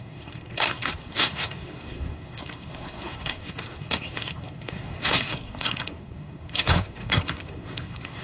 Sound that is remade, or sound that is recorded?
remade